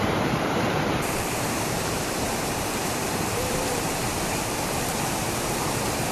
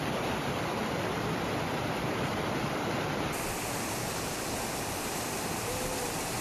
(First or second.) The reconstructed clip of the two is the first